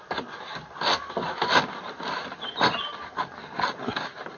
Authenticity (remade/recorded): recorded